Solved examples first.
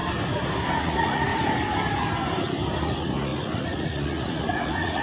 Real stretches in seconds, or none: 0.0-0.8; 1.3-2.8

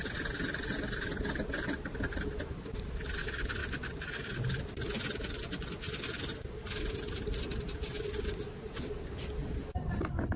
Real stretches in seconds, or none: 0.0-10.4

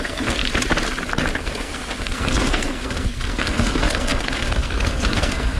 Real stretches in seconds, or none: 0.4-1.4

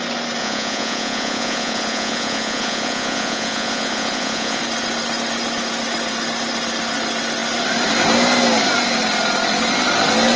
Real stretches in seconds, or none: 0.0-0.4; 4.6-10.4

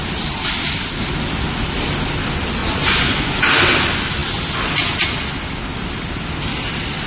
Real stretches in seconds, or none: 0.0-2.6; 3.4-7.1